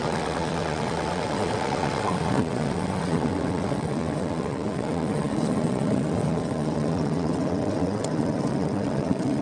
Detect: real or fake fake